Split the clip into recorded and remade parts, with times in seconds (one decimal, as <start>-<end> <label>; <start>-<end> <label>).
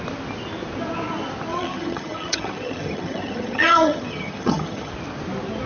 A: 0.0-1.5 recorded; 1.5-4.9 remade; 4.9-5.7 recorded